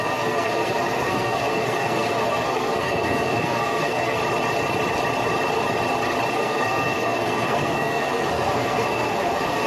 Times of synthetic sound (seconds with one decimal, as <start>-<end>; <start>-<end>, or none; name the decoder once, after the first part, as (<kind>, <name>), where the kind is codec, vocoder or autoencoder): 0.0-4.2 (codec, SNAC); 6.3-9.7